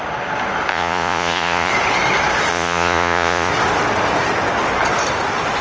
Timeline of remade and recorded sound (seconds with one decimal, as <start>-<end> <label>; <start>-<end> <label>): 0.0-0.7 recorded; 0.7-1.7 remade; 1.7-2.5 recorded; 2.5-3.5 remade; 3.5-5.6 recorded

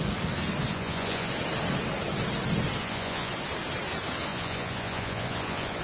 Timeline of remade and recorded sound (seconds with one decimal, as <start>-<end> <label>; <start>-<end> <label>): 0.0-0.7 recorded; 0.7-1.3 remade; 1.3-2.8 recorded; 2.8-3.3 remade; 3.3-4.3 recorded; 4.3-5.8 remade

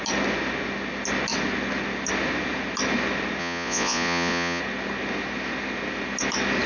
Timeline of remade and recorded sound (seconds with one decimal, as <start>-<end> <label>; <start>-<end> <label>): 0.0-3.4 recorded; 3.4-4.6 remade; 4.6-6.7 recorded